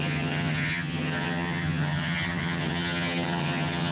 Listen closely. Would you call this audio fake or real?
fake